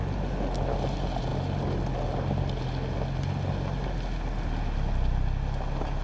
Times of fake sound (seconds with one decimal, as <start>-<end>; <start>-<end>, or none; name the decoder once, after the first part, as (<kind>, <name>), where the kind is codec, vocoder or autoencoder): none